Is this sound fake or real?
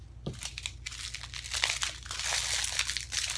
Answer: real